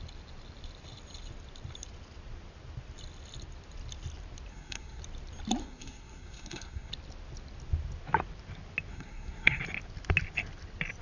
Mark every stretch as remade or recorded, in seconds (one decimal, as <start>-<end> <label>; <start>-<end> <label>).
0.0-4.5 recorded; 4.5-5.0 remade; 5.0-5.6 recorded; 5.6-6.9 remade; 6.9-8.9 recorded; 8.9-9.6 remade; 9.6-11.0 recorded

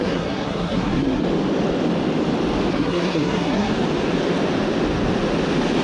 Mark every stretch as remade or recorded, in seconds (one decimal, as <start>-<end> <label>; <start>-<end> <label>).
0.0-1.2 remade; 1.2-2.7 recorded; 2.7-3.7 remade; 3.7-5.8 recorded

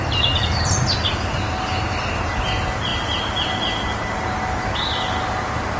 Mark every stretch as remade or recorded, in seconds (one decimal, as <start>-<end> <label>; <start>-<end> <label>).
0.0-5.8 recorded

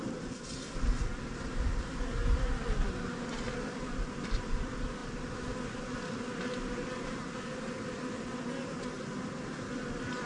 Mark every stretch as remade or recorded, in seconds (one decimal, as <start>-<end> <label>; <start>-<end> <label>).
0.0-10.3 recorded

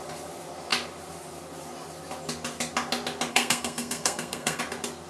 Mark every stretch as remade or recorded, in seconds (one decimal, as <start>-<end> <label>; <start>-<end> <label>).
0.0-3.3 recorded; 3.3-4.6 remade; 4.6-5.1 recorded

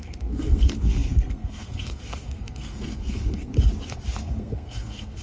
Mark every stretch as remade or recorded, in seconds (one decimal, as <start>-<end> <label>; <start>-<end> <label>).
0.0-3.5 remade; 3.5-4.2 recorded; 4.2-5.2 remade

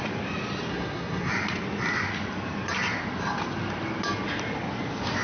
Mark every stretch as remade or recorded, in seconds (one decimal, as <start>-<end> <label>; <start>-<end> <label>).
0.0-0.7 recorded; 0.7-1.3 remade; 1.3-5.2 recorded

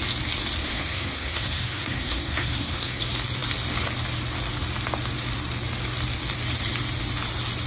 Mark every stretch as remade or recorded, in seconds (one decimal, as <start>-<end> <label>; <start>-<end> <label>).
0.0-0.6 recorded; 0.6-3.0 remade; 3.0-7.7 recorded